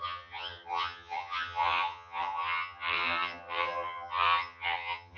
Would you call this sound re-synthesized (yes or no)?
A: yes